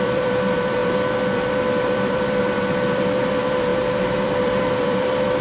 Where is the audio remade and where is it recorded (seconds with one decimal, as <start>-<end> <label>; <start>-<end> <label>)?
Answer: 0.0-5.4 remade